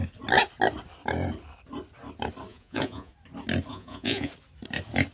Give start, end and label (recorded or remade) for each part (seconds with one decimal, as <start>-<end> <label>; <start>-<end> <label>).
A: 0.0-2.5 recorded; 2.5-3.1 remade; 3.1-3.7 recorded; 3.7-4.3 remade; 4.3-5.1 recorded